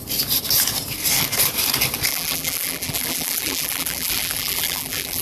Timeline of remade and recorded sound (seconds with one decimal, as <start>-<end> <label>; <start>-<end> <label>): 0.0-2.1 recorded; 2.1-5.2 remade